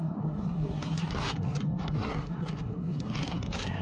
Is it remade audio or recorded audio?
remade